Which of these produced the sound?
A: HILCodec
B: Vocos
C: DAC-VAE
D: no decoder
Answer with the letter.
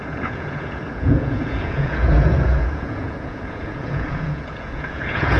B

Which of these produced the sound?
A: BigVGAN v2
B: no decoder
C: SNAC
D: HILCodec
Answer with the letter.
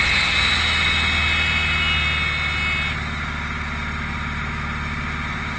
B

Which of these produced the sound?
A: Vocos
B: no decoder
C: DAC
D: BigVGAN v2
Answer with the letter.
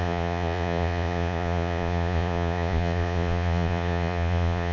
A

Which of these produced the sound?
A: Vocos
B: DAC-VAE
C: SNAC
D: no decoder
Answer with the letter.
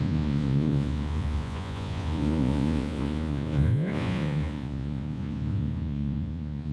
A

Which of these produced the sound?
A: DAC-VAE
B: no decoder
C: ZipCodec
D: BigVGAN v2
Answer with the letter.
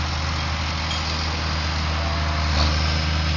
B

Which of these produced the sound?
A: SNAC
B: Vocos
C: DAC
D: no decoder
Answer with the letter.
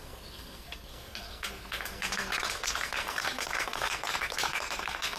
A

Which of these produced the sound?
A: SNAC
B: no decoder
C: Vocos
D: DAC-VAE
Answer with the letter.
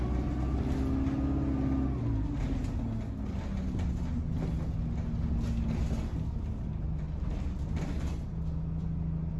B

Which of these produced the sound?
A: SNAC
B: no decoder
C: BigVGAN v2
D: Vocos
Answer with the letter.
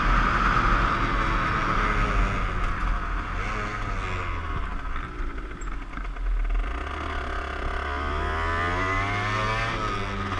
B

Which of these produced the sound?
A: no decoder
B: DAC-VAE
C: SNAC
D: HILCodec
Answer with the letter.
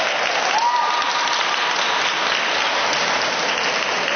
A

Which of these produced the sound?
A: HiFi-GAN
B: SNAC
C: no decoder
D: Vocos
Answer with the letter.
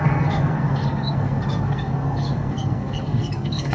B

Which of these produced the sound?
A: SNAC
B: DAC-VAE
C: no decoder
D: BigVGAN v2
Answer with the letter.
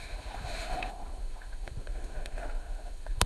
B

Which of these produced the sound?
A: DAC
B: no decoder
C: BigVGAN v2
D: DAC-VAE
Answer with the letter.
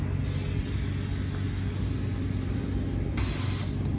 B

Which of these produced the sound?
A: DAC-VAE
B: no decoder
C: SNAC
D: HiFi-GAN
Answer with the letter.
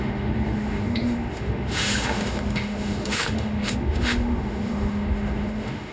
A